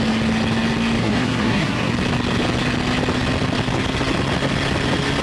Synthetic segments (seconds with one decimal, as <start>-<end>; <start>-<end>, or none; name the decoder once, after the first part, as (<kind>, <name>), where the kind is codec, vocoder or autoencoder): 1.0-1.9 (codec, SNAC)